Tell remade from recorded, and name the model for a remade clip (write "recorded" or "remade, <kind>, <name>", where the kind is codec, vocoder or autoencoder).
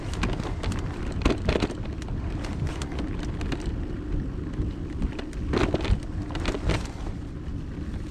recorded